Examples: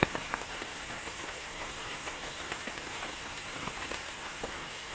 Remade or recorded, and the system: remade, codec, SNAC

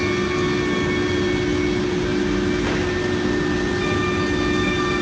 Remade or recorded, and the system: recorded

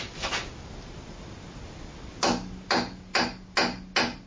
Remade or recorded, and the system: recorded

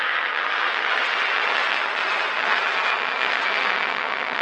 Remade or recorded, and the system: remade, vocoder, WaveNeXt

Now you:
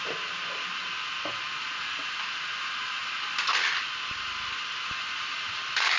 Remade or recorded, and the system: recorded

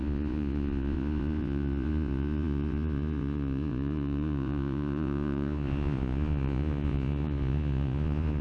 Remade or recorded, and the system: remade, vocoder, Vocos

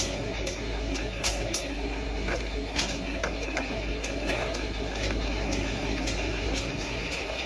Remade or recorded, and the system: remade, codec, SNAC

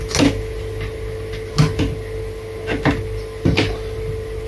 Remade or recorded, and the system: recorded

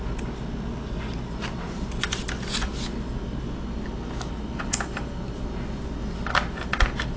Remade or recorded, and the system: recorded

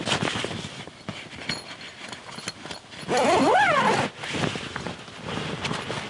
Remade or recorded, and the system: recorded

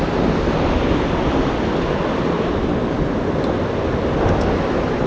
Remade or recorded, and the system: recorded